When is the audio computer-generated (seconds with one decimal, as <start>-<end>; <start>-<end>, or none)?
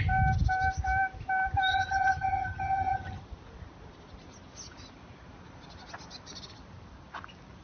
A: 1.7-3.2